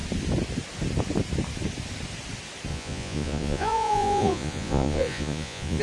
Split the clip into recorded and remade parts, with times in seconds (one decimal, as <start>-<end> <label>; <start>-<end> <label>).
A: 0.0-2.7 recorded; 2.7-5.8 remade